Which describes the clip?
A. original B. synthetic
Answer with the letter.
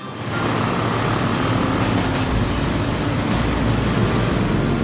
A